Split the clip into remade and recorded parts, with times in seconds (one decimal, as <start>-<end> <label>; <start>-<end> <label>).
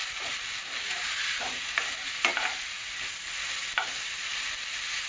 0.0-1.1 remade; 1.1-2.3 recorded; 2.3-3.0 remade; 3.0-5.1 recorded